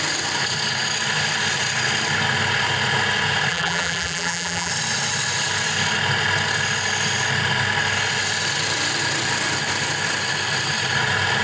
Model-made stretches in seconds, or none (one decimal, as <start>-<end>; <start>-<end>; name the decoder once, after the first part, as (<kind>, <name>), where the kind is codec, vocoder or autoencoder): 3.5-4.7 (vocoder, BigVGAN v2)